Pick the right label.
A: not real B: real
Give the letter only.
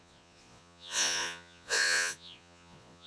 A